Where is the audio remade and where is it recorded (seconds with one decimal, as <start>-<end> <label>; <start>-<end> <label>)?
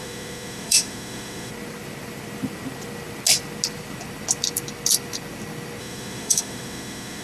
0.0-1.5 remade; 1.5-5.8 recorded; 5.8-7.2 remade